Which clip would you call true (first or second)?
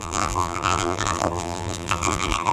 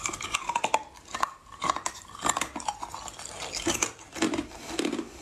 second